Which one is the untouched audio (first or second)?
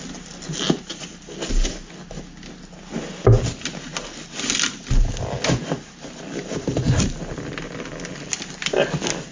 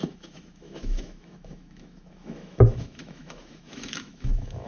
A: first